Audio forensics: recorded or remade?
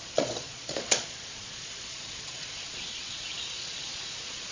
remade